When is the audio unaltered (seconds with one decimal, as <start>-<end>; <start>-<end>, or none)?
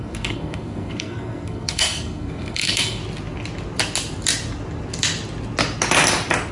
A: 3.0-6.5